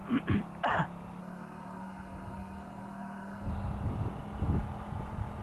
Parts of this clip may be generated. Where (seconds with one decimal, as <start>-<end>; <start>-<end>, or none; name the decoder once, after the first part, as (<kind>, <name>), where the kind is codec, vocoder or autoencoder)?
1.2-3.5 (codec, SNAC)